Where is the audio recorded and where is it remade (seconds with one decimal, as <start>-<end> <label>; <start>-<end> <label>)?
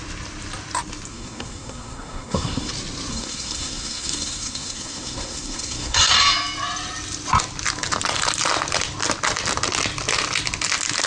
0.0-1.1 recorded; 1.1-2.7 remade; 2.7-3.1 recorded; 3.1-6.1 remade; 6.1-11.1 recorded